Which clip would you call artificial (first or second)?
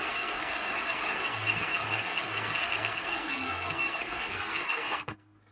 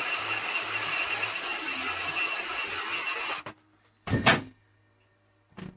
first